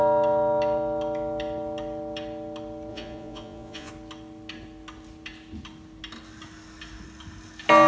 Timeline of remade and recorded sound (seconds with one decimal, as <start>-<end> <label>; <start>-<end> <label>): 0.0-2.9 recorded; 2.9-3.9 remade; 3.9-7.9 recorded